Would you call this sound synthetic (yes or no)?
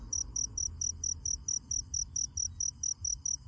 no